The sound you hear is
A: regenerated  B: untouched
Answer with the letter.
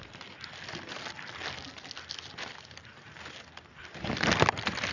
B